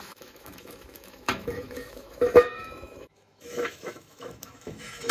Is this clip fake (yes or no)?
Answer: yes